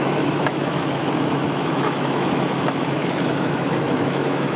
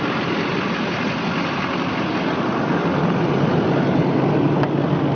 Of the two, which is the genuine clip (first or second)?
second